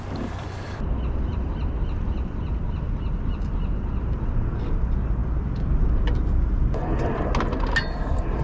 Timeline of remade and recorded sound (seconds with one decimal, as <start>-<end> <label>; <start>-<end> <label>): 0.0-8.4 recorded